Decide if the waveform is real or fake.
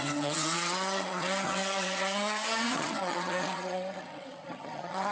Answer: fake